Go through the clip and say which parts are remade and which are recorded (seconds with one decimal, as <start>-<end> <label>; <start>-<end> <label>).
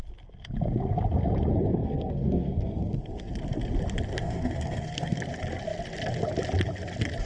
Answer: 0.0-1.5 recorded; 1.5-3.3 remade; 3.3-4.2 recorded; 4.2-5.2 remade; 5.2-7.3 recorded